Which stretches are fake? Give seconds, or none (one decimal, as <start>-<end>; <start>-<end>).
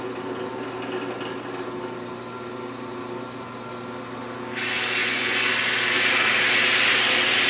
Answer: 5.0-5.5